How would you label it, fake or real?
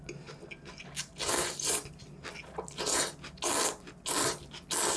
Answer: real